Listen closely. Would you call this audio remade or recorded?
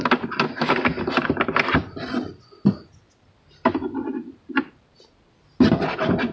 recorded